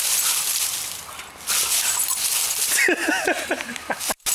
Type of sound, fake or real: real